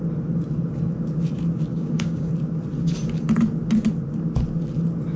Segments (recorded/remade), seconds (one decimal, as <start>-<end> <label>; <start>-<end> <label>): 0.0-1.7 recorded; 1.7-2.3 remade; 2.3-5.2 recorded